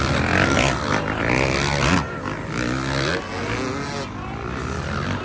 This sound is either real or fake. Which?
real